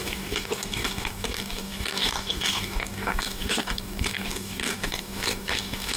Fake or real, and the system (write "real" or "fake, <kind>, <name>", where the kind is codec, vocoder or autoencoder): fake, codec, DAC